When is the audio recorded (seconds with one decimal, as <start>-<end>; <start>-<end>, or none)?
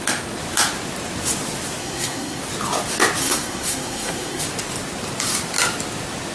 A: 0.0-1.8; 2.4-3.2; 4.4-6.3